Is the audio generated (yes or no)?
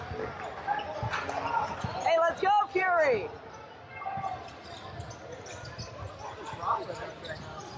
no